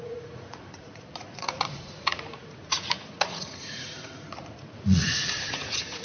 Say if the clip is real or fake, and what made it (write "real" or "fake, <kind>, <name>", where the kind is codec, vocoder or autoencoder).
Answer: fake, vocoder, Vocos